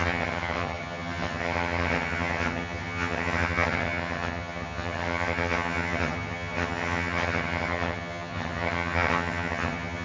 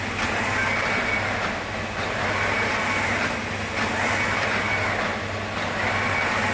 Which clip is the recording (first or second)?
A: second